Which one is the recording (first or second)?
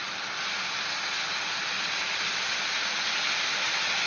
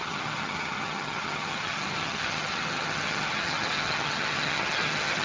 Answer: first